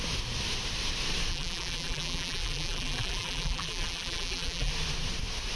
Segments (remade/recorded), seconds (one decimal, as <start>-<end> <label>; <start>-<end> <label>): 0.0-1.3 recorded; 1.3-4.7 remade; 4.7-5.6 recorded